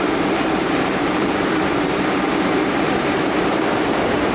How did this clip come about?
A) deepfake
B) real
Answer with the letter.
A